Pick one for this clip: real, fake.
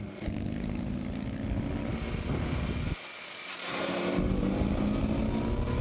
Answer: real